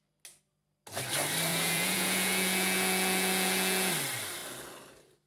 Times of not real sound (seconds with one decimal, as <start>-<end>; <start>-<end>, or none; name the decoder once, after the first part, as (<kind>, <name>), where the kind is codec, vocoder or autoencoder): 1.5-3.9 (vocoder, Vocos)